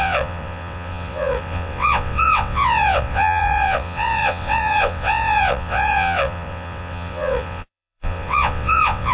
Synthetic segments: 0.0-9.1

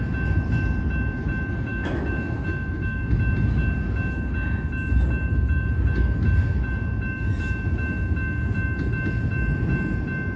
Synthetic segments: 1.7-3.0